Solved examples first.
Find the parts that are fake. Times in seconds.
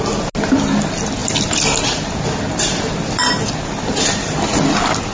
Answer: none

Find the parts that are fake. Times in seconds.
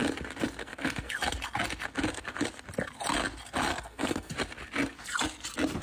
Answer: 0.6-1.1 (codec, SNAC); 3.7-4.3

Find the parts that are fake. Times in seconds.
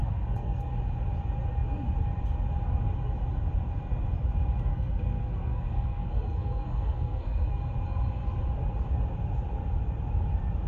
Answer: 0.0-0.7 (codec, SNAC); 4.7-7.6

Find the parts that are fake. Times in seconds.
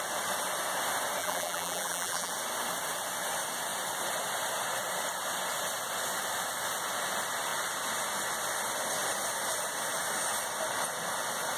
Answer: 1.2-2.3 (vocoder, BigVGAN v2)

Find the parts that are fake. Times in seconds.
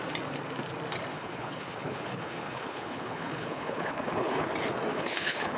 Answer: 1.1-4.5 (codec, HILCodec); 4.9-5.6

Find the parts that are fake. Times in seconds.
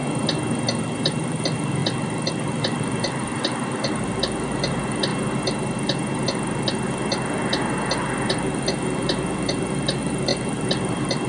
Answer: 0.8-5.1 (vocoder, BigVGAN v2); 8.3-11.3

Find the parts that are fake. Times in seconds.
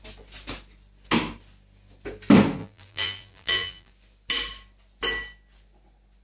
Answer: 2.6-3.9 (vocoder, BigVGAN v2)